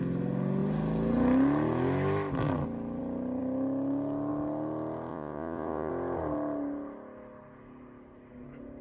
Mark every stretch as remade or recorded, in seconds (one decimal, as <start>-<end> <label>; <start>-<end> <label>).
0.0-5.1 recorded; 5.1-5.9 remade; 5.9-8.8 recorded

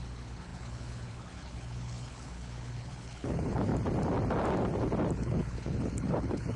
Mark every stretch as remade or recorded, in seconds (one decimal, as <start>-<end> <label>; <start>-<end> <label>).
0.0-3.7 remade; 3.7-5.1 recorded; 5.1-6.6 remade

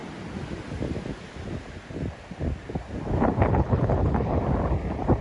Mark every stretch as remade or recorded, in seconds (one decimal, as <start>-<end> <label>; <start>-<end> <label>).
0.0-3.5 recorded; 3.5-4.4 remade; 4.4-5.2 recorded

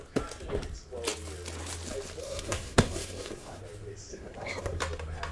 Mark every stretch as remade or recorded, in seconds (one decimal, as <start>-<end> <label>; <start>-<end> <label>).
0.0-2.2 recorded; 2.2-3.6 remade; 3.6-4.1 recorded; 4.1-4.8 remade; 4.8-5.3 recorded

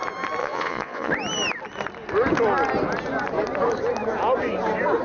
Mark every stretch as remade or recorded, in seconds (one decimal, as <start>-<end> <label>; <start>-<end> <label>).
0.0-0.4 recorded; 0.4-1.1 remade; 1.1-5.0 recorded

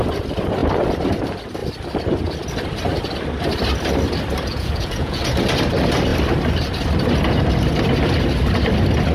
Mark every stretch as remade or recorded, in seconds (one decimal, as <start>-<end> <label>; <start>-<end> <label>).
0.0-4.5 recorded; 4.5-5.2 remade; 5.2-9.1 recorded